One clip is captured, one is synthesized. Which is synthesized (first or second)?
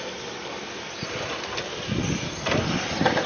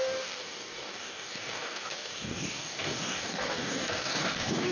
second